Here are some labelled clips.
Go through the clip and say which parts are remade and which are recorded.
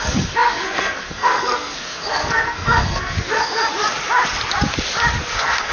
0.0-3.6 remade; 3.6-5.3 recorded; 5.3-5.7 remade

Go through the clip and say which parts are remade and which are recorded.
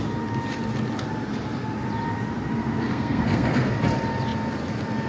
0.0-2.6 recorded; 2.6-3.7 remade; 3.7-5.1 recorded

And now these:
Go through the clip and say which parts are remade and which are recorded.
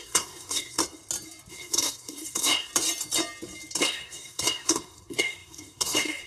0.0-0.8 remade; 0.8-1.5 recorded; 1.5-2.7 remade; 2.7-3.8 recorded; 3.8-6.3 remade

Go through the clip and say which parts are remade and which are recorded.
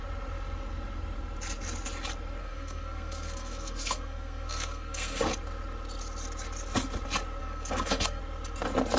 0.0-2.4 recorded; 2.4-5.2 remade; 5.2-7.4 recorded; 7.4-8.2 remade; 8.2-9.0 recorded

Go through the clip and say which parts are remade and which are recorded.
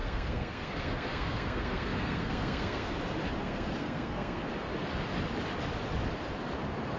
0.0-2.9 remade; 2.9-3.4 recorded; 3.4-4.4 remade; 4.4-7.0 recorded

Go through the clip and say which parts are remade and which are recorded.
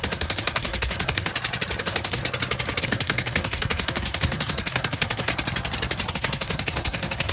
0.0-1.3 remade; 1.3-1.8 recorded; 1.8-2.2 remade; 2.2-2.8 recorded; 2.8-5.3 remade; 5.3-6.1 recorded; 6.1-7.3 remade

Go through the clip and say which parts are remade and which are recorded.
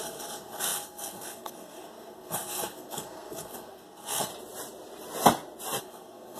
0.0-4.3 remade; 4.3-5.8 recorded; 5.8-6.4 remade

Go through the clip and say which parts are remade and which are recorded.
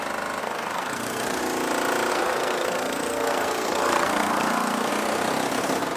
0.0-0.4 recorded; 0.4-1.4 remade; 1.4-2.1 recorded; 2.1-4.9 remade; 4.9-6.0 recorded